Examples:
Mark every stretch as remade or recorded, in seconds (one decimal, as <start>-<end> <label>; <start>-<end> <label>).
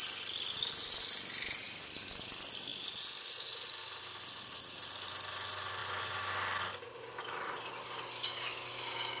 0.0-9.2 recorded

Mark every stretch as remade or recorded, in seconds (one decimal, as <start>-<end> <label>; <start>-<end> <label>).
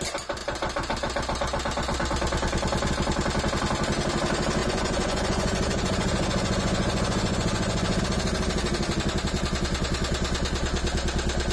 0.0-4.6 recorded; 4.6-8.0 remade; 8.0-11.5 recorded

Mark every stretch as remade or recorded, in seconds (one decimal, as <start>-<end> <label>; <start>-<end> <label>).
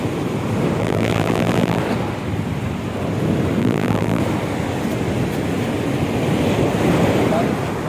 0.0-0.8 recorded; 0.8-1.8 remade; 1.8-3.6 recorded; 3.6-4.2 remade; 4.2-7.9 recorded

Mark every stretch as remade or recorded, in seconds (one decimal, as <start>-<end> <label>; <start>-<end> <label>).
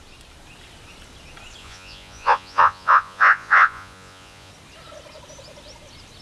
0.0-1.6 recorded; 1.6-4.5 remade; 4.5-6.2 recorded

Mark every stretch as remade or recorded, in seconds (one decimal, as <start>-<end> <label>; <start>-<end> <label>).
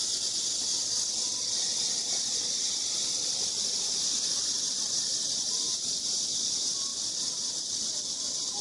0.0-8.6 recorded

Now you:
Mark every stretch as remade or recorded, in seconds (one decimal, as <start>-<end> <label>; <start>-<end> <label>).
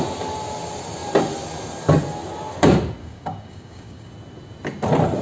0.0-3.0 recorded; 3.0-4.1 remade; 4.1-5.2 recorded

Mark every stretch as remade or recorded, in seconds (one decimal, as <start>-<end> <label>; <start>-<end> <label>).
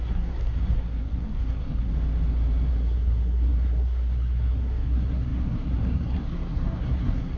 0.0-1.9 remade; 1.9-2.7 recorded; 2.7-7.4 remade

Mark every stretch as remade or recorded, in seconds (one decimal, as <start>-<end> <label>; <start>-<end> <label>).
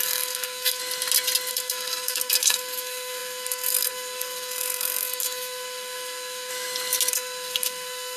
0.0-0.8 remade; 0.8-1.5 recorded; 1.5-6.5 remade; 6.5-7.1 recorded; 7.1-8.2 remade